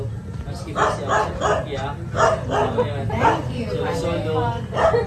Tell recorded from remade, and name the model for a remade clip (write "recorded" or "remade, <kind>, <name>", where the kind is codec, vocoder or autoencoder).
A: recorded